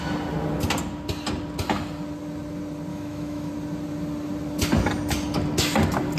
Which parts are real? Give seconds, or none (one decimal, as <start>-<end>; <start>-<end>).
0.0-2.9; 3.5-6.2